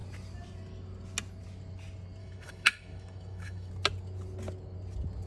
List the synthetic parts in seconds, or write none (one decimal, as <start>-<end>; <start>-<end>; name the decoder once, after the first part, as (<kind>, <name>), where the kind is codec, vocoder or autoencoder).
2.2-3.7 (autoencoder, DAC-VAE)